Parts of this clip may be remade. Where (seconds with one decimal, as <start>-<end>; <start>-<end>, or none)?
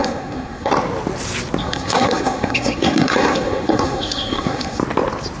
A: 0.0-0.7; 1.6-4.8